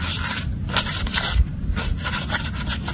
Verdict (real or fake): real